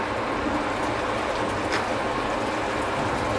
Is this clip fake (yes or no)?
no